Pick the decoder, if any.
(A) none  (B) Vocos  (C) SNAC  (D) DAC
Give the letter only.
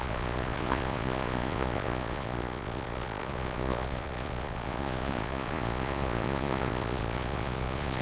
B